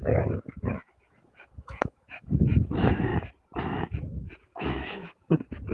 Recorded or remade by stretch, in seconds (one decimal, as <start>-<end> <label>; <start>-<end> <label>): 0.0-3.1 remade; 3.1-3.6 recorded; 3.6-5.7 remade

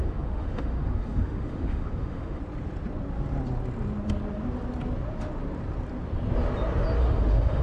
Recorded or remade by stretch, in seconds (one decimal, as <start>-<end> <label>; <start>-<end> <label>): 0.0-2.4 remade; 2.4-7.0 recorded; 7.0-7.6 remade

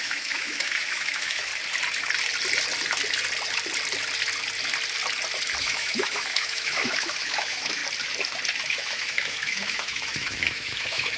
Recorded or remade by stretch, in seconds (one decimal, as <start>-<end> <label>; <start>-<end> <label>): 0.0-1.5 remade; 1.5-5.6 recorded; 5.6-7.8 remade; 7.8-8.6 recorded; 8.6-11.2 remade